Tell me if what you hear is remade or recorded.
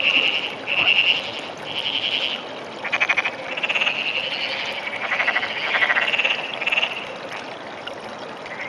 recorded